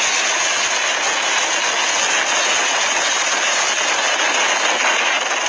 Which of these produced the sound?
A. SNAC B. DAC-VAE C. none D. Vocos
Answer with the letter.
C